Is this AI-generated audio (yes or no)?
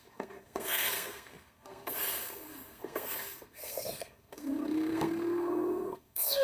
yes